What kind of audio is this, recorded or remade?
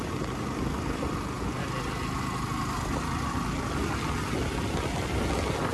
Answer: recorded